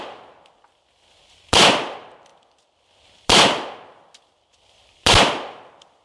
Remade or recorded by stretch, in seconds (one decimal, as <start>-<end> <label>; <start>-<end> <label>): 0.0-6.0 recorded